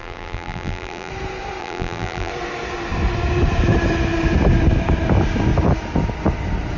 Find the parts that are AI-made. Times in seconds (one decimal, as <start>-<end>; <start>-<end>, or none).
0.0-1.1; 1.6-2.3